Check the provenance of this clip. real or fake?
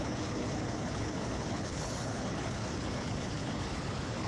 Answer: fake